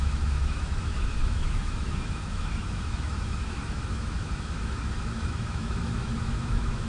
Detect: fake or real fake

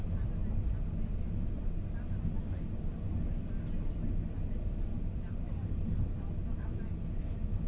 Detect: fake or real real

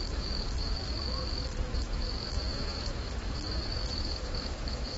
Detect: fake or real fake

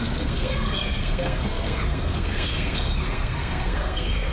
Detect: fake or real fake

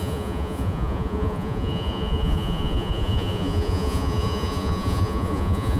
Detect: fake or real fake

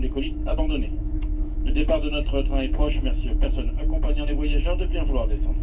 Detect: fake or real fake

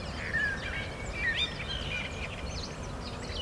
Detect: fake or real real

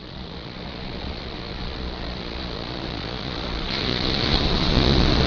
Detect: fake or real fake